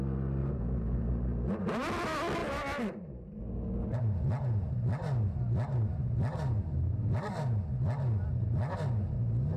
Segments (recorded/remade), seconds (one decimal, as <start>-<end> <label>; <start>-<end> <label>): 0.0-0.4 recorded; 0.4-1.1 remade; 1.1-9.6 recorded